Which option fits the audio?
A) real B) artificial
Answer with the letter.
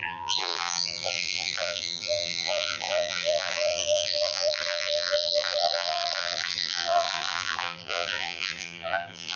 B